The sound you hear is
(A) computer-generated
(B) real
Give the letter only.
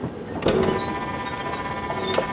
B